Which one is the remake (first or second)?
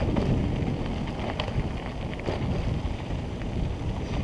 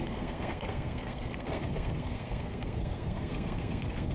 second